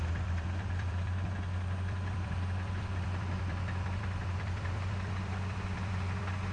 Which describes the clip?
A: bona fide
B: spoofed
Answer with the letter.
B